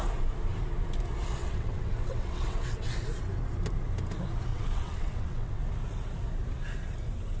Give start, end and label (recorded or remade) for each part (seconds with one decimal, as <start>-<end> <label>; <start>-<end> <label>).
0.0-1.4 recorded; 1.4-2.9 remade; 2.9-4.5 recorded; 4.5-5.6 remade; 5.6-7.4 recorded